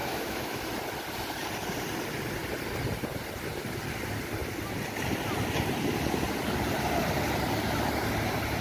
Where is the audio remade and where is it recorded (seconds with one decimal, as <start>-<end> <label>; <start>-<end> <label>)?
0.0-0.6 remade; 0.6-8.6 recorded